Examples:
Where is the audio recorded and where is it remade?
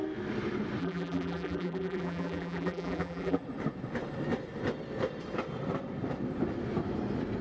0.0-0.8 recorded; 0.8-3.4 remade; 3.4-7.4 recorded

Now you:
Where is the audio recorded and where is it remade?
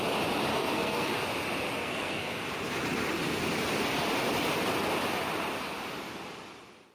0.0-0.5 recorded; 0.5-1.2 remade; 1.2-1.8 recorded; 1.8-2.4 remade; 2.4-6.9 recorded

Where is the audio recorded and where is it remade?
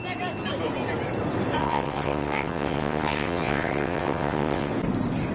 0.0-1.6 recorded; 1.6-4.7 remade; 4.7-5.3 recorded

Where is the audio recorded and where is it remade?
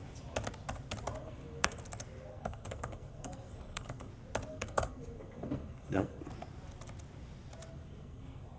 0.0-1.2 recorded; 1.2-1.8 remade; 1.8-2.3 recorded; 2.3-4.1 remade; 4.1-4.5 recorded; 4.5-6.2 remade; 6.2-7.7 recorded; 7.7-8.6 remade